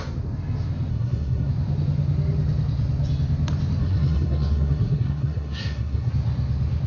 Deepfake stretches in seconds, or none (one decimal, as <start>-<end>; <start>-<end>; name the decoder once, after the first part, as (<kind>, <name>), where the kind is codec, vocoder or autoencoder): 0.9-1.5 (codec, SNAC); 3.8-6.1